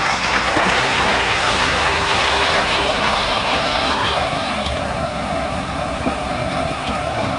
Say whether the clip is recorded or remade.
remade